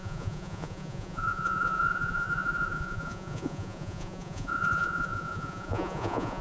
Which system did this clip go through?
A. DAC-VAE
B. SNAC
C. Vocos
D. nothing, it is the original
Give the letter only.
C